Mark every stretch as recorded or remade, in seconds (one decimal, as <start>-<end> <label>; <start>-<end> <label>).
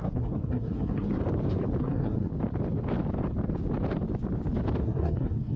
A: 0.0-1.2 remade; 1.2-1.8 recorded; 1.8-2.3 remade; 2.3-4.8 recorded; 4.8-5.6 remade